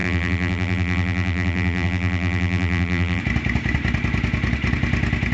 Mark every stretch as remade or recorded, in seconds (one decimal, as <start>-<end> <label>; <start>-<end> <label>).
0.0-3.2 remade; 3.2-5.3 recorded